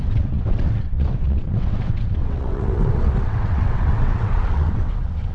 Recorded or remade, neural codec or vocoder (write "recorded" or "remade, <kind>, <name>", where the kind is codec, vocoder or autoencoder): remade, vocoder, WaveNeXt